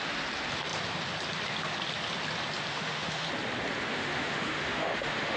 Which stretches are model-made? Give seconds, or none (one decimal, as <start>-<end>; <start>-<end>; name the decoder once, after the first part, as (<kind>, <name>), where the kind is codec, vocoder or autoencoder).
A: 2.7-3.3 (autoencoder, DAC-VAE); 3.9-5.4